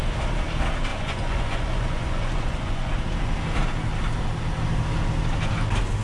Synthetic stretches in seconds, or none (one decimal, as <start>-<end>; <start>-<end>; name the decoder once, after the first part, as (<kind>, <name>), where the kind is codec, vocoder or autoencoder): 0.9-2.9 (vocoder, Vocos)